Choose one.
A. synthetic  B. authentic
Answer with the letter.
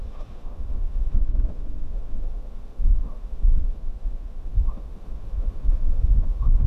A